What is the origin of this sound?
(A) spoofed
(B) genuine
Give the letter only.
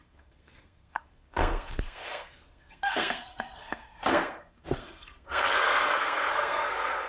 A